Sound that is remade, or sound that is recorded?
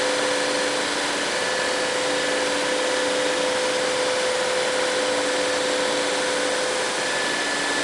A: recorded